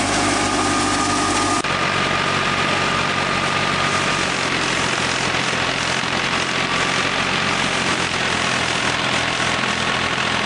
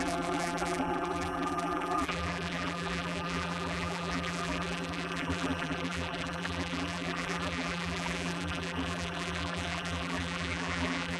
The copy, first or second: second